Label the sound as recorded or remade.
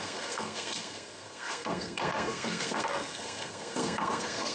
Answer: remade